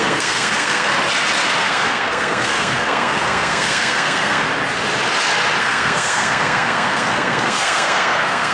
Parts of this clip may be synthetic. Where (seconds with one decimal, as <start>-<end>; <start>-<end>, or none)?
0.0-0.9; 1.6-4.4; 5.6-8.5